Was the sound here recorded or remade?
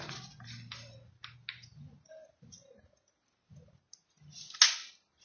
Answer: recorded